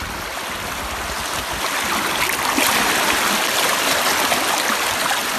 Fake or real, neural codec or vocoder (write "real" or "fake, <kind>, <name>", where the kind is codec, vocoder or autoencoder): real